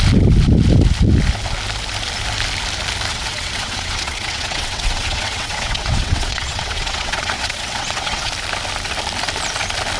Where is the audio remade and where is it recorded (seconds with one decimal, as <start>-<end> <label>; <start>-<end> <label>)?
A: 0.0-3.1 recorded; 3.1-8.3 remade; 8.3-10.0 recorded